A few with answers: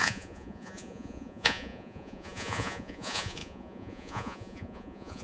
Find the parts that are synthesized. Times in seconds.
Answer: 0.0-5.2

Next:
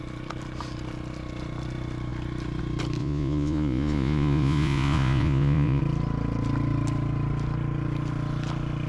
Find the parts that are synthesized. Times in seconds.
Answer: 3.0-5.8

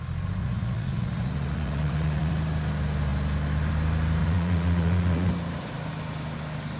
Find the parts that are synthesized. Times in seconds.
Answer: 0.4-2.3; 4.2-5.3

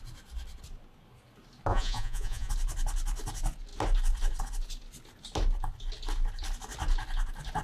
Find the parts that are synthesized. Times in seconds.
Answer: 1.7-2.5

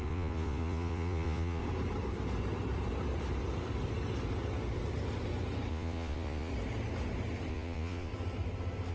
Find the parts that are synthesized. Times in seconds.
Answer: 0.0-1.6; 5.7-6.5; 7.5-8.1

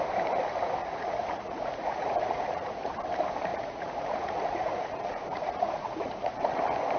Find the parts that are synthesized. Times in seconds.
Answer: 0.8-2.9; 3.5-6.6